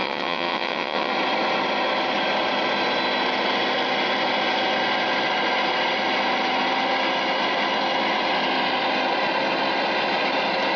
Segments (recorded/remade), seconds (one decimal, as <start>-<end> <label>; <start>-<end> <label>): 0.0-1.1 remade; 1.1-10.8 recorded